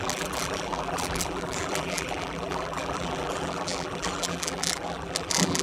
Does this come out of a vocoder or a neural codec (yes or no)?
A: yes